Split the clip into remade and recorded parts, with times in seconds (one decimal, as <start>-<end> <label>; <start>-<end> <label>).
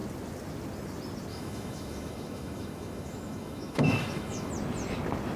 0.0-1.3 recorded; 1.3-4.5 remade; 4.5-5.4 recorded